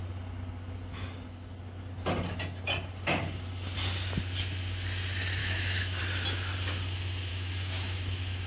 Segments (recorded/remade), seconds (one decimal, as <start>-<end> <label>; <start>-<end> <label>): 0.0-5.4 recorded; 5.4-6.0 remade; 6.0-7.3 recorded; 7.3-8.5 remade

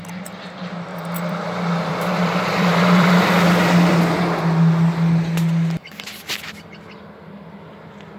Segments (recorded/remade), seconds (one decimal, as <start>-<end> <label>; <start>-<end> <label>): 0.0-0.9 recorded; 0.9-3.1 remade; 3.1-8.2 recorded